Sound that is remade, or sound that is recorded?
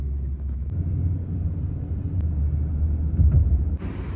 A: recorded